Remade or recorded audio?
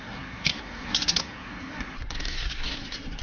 remade